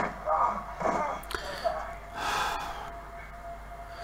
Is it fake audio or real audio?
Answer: real